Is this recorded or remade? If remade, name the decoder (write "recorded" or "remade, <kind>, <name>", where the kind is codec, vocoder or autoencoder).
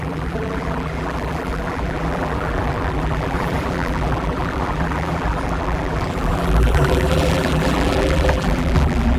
remade, vocoder, BigVGAN v2